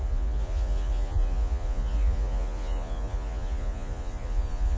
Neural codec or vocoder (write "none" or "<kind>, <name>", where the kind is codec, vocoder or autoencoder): vocoder, Vocos